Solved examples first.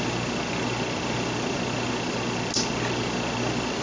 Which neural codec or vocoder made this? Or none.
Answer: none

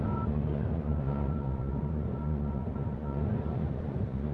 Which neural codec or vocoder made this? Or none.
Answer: vocoder, Vocos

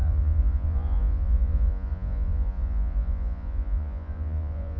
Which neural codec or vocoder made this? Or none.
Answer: vocoder, Vocos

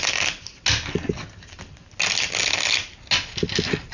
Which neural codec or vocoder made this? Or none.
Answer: none